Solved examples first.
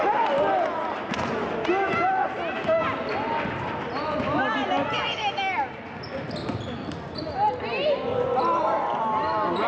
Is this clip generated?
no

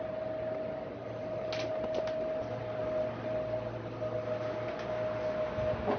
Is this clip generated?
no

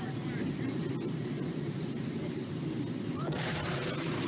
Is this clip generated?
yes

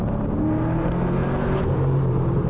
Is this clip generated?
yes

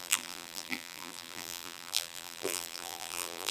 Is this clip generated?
yes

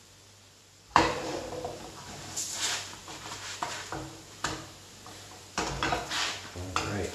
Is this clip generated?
yes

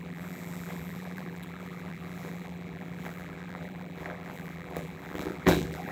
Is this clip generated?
yes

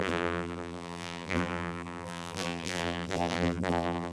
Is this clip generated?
yes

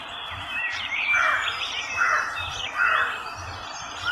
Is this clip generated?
yes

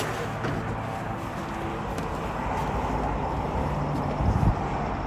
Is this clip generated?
no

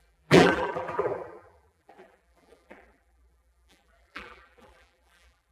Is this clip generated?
yes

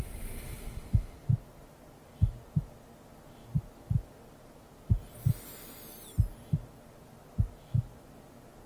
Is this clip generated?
no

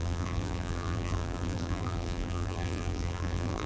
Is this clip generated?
yes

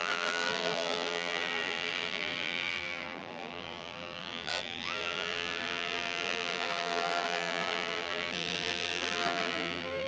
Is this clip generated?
yes